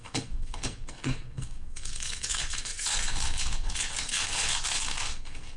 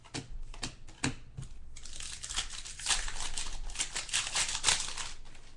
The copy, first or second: first